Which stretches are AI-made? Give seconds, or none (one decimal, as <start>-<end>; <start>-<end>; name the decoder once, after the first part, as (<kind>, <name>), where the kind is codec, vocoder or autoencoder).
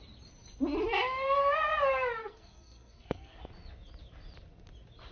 2.2-3.4 (codec, SNAC)